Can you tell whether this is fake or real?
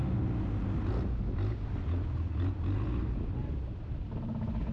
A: real